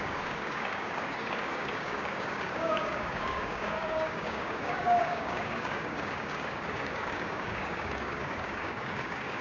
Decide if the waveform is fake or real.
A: fake